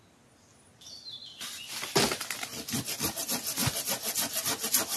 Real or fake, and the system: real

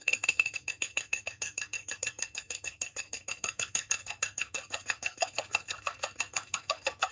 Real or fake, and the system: fake, codec, SNAC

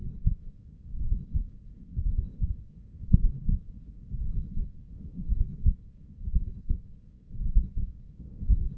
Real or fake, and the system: fake, codec, SNAC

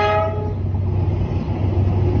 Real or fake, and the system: real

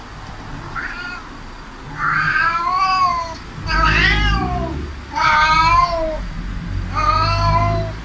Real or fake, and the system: real